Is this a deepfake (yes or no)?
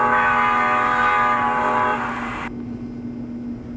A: no